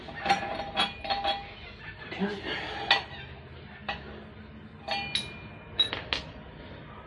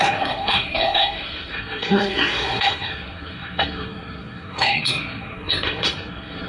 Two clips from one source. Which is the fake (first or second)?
second